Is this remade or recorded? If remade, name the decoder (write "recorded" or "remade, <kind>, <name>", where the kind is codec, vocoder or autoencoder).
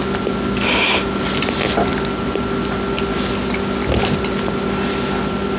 recorded